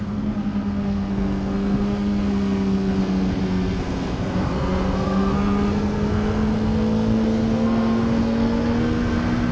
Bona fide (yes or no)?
no